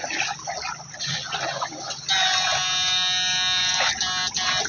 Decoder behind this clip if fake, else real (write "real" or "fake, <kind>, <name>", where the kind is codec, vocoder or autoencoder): real